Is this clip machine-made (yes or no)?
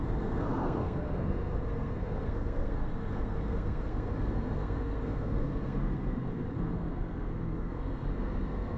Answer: yes